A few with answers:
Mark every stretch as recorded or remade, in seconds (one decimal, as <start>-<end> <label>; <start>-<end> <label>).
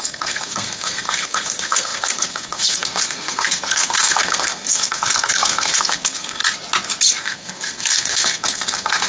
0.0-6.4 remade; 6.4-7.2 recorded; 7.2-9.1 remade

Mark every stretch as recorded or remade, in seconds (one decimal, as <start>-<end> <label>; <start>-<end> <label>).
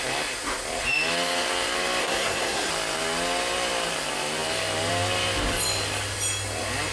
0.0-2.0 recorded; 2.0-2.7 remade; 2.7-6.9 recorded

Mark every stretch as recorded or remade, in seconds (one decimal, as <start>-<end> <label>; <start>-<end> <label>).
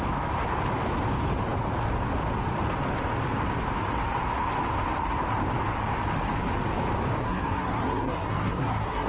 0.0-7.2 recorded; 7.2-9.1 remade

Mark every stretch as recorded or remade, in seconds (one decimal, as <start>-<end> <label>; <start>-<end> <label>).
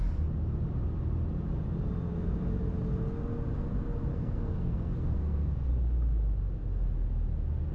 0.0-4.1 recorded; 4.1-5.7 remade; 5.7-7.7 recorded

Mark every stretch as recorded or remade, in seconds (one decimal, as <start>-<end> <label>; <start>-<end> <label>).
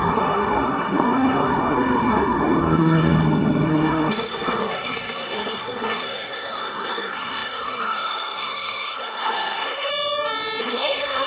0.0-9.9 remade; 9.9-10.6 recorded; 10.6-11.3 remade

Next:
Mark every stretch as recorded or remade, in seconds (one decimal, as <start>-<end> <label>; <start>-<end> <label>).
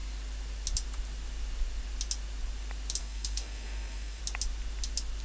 0.0-3.0 recorded; 3.0-4.2 remade; 4.2-5.2 recorded